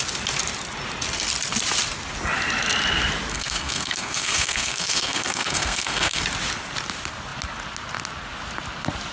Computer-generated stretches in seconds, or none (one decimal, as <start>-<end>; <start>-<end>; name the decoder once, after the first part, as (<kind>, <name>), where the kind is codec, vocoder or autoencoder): 3.3-6.2 (codec, SNAC)